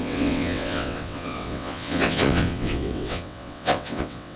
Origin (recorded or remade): remade